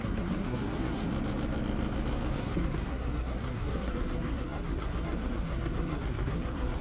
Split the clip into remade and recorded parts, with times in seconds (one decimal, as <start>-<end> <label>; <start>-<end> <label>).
0.0-1.1 remade; 1.1-2.4 recorded; 2.4-6.8 remade